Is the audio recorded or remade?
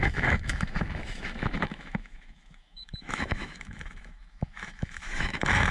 remade